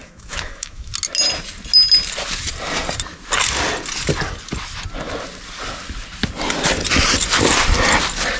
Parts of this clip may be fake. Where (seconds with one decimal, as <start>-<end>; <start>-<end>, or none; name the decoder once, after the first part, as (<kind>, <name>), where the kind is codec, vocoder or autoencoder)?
0.0-0.9 (autoencoder, DAC-VAE)